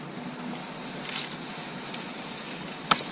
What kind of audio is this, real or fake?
real